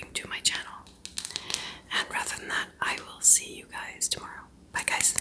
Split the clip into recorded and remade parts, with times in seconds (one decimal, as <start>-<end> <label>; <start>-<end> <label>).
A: 0.0-5.2 recorded